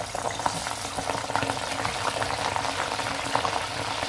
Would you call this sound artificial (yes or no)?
no